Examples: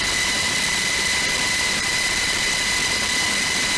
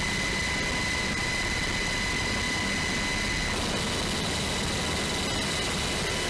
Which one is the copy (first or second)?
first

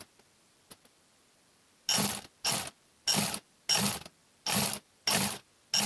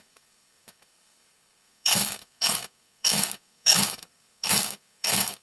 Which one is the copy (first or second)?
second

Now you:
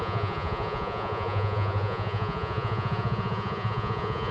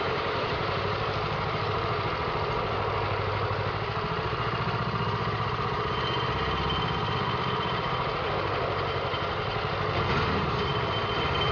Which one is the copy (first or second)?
first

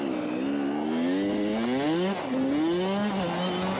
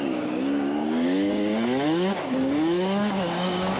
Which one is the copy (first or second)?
second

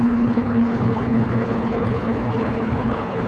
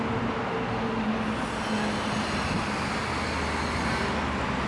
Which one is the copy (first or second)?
first